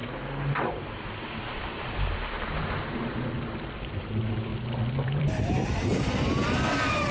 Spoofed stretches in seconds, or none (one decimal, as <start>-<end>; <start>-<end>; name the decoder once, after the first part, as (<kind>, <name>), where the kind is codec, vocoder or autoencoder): 4.0-4.5 (vocoder, BigVGAN v2); 5.2-7.1